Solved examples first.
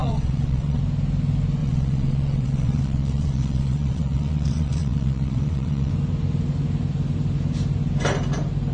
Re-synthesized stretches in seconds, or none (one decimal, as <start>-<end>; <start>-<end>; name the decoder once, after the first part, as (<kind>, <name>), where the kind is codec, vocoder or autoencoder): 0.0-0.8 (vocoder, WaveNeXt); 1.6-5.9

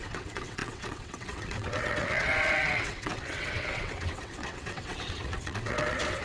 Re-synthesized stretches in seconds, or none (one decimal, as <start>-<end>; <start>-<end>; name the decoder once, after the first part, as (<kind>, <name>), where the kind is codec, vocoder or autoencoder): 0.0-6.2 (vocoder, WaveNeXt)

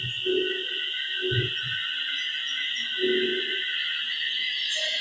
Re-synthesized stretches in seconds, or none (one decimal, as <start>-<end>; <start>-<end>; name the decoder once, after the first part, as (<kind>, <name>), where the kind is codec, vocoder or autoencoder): none